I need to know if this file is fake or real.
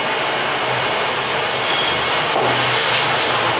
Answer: real